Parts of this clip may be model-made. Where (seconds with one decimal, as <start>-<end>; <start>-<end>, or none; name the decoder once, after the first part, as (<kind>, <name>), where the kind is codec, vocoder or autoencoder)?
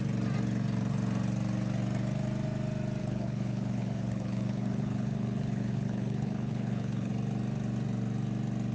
3.0-7.1 (codec, HILCodec)